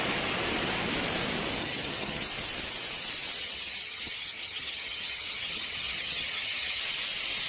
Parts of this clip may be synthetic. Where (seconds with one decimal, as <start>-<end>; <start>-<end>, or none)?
1.6-2.2; 3.4-6.8